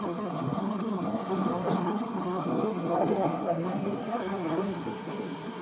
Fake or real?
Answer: fake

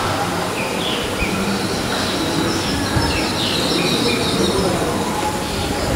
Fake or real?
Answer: real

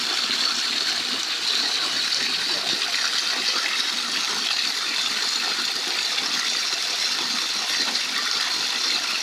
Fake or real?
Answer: real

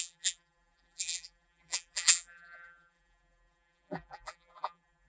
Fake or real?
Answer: fake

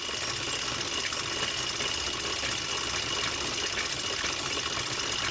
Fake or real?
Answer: real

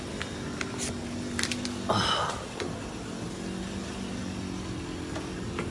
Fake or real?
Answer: real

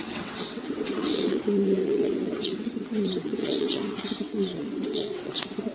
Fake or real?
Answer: fake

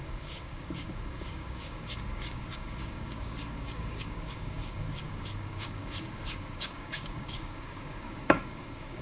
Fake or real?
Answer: fake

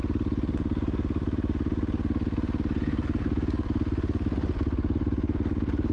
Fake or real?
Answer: real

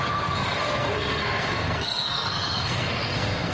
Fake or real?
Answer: fake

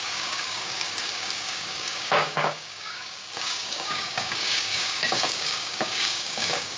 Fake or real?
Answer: fake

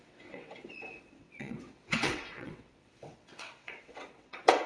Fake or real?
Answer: fake